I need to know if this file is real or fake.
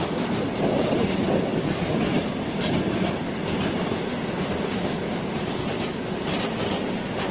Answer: real